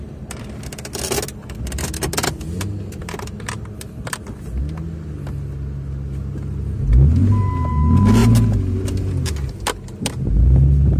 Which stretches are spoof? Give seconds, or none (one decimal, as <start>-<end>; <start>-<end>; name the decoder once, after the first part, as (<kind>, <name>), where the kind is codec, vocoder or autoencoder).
none